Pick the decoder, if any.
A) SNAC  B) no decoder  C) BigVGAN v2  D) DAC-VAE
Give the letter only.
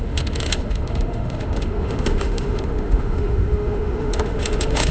D